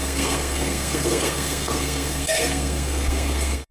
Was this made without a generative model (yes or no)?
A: no